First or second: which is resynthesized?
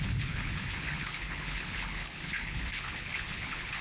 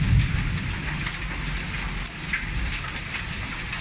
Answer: first